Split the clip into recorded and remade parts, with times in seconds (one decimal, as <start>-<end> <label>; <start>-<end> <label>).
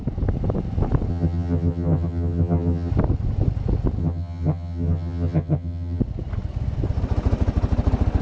0.0-1.1 recorded; 1.1-2.9 remade; 2.9-4.0 recorded; 4.0-6.0 remade; 6.0-8.2 recorded